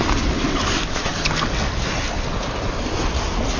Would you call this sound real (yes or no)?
yes